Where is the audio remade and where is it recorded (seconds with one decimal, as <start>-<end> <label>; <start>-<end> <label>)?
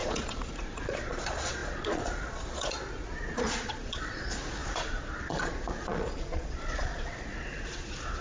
0.0-8.2 remade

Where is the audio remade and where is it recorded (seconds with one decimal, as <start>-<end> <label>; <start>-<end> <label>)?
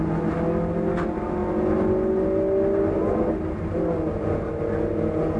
0.0-5.4 recorded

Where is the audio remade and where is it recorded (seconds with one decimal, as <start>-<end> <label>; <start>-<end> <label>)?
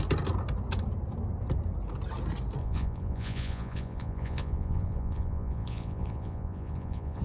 0.0-2.6 recorded; 2.6-7.2 remade